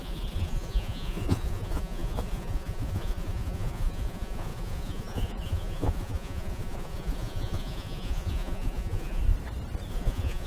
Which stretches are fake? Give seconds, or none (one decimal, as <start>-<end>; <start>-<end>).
0.0-9.2; 9.9-10.5